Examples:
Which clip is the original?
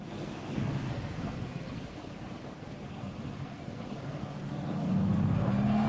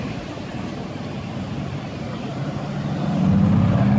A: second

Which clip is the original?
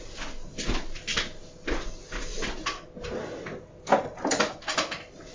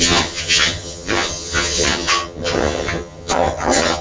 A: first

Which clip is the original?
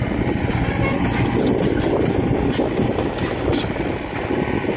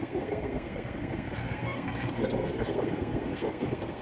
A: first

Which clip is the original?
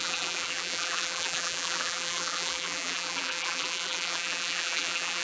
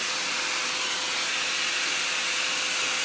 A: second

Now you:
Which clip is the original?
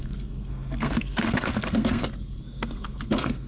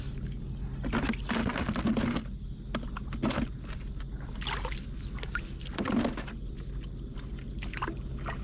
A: second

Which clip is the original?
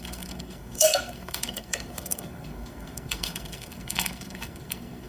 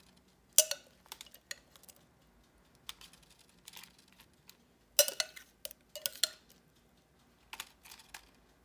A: second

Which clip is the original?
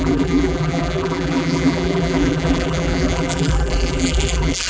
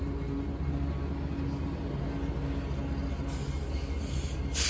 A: second